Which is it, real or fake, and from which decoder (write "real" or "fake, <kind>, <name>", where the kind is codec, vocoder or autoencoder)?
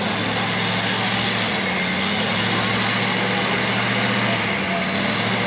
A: real